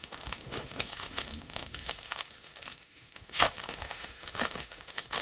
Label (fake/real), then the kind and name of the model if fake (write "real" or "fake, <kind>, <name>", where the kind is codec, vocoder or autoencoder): fake, autoencoder, DAC-VAE